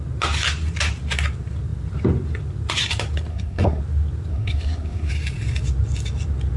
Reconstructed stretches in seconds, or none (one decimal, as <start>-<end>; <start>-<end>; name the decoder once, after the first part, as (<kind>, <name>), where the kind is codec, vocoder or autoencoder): 3.3-3.8 (codec, SNAC); 4.3-5.1